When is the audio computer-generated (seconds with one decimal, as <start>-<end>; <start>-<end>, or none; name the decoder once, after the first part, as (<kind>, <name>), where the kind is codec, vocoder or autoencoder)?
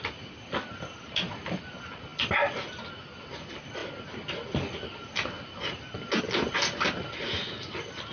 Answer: none